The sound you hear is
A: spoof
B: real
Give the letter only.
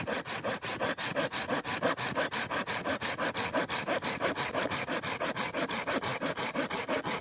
B